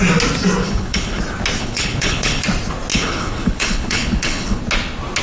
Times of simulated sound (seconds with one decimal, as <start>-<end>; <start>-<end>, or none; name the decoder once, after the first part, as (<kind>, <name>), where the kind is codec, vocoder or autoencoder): 0.6-1.2 (codec, HILCodec); 1.6-2.4; 2.9-4.6

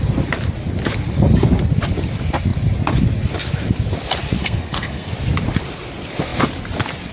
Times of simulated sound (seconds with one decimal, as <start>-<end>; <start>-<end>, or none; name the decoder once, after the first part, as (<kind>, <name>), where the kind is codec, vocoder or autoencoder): 4.4-5.1 (codec, SNAC)

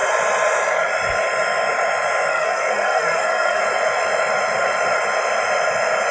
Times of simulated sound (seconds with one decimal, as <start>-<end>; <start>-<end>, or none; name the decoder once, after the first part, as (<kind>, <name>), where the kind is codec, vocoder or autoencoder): 2.3-3.6 (codec, SNAC)

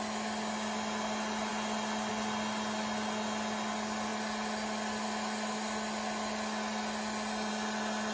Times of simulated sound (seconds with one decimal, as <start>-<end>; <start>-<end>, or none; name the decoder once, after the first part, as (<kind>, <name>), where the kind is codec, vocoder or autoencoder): none

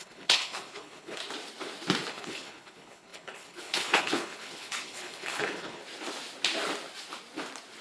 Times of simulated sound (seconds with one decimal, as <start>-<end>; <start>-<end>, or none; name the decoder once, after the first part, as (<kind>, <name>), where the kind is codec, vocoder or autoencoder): 0.0-1.2 (codec, HILCodec); 2.1-5.8

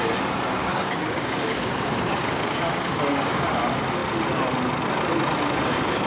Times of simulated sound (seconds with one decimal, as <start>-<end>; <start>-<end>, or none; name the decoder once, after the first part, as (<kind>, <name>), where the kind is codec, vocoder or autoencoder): 0.6-3.4 (codec, DAC)

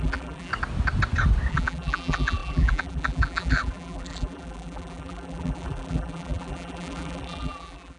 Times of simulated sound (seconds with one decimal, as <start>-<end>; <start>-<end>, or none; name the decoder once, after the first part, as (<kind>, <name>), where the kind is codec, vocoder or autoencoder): 0.0-0.5 (vocoder, BigVGAN v2); 1.5-8.0

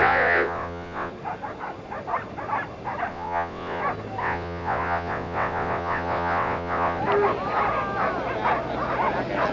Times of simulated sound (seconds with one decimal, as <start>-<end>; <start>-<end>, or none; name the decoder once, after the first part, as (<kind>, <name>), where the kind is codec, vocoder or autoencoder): 0.0-1.1 (vocoder, WaveNeXt); 3.1-3.8; 4.2-7.0